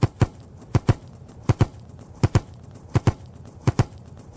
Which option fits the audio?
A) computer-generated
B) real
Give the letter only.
A